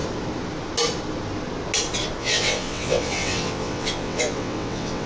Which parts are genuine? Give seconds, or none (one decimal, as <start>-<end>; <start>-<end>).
0.0-2.2